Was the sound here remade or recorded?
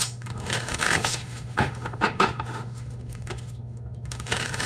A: remade